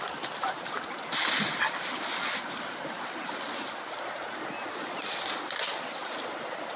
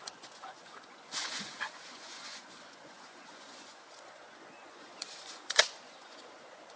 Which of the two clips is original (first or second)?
first